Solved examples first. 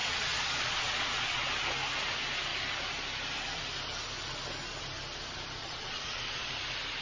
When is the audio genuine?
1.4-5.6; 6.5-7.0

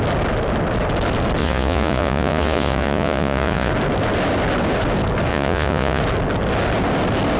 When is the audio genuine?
0.0-1.4; 3.7-5.3; 6.0-7.4

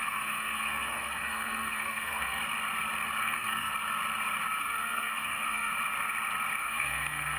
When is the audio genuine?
2.4-3.2; 3.7-4.6; 5.7-6.6

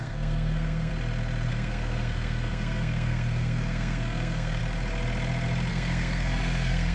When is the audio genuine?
0.9-1.5; 4.6-5.7

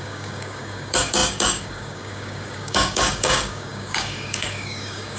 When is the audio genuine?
none

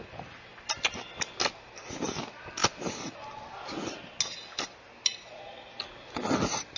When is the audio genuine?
0.0-6.8

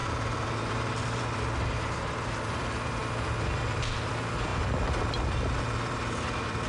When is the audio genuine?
4.5-5.1

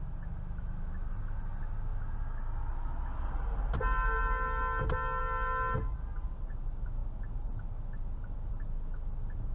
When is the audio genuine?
0.0-9.5